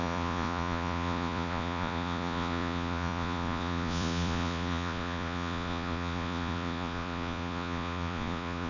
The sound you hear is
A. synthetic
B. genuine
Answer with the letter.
A